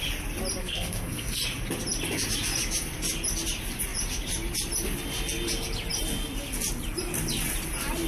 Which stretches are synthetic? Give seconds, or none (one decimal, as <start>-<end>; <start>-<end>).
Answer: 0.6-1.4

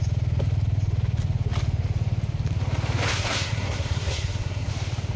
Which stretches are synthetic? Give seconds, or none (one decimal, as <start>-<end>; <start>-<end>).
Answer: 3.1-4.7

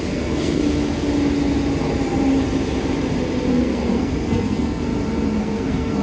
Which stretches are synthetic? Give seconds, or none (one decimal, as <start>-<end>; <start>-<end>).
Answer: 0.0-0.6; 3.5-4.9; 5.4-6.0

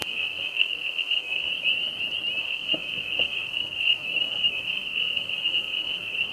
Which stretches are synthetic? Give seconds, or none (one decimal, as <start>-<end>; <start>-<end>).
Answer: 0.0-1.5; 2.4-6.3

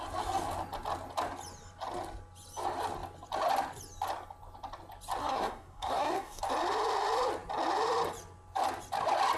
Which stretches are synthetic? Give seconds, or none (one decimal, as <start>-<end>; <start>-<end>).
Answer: 5.2-6.4